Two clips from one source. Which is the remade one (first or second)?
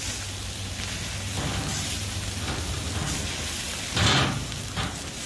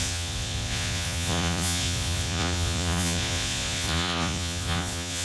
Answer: second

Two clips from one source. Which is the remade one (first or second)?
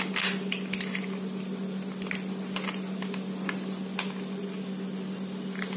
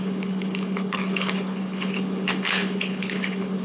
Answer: second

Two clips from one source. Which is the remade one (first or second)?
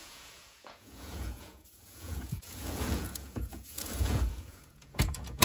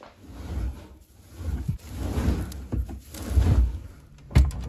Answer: first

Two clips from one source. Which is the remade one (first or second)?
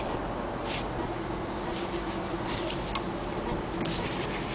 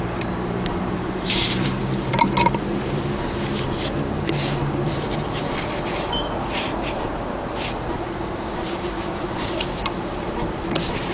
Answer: second